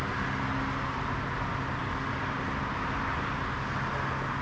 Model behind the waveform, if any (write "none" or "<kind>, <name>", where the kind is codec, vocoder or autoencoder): none